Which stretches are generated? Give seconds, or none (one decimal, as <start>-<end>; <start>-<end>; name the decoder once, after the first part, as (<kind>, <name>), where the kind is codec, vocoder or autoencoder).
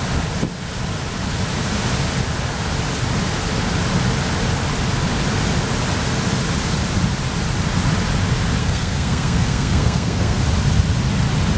8.6-10.4 (codec, SNAC)